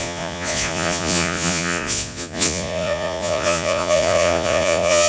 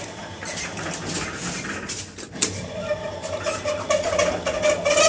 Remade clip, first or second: first